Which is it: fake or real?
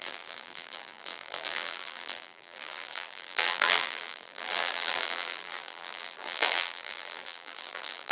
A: fake